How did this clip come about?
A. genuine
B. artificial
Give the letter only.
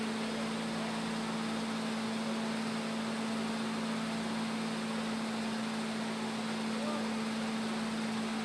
A